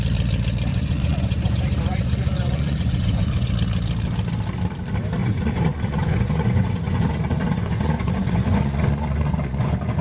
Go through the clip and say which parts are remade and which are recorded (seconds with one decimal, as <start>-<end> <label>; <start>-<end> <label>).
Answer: 0.0-0.7 recorded; 0.7-3.5 remade; 3.5-5.2 recorded; 5.2-10.0 remade